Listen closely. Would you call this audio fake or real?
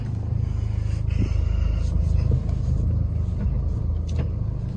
real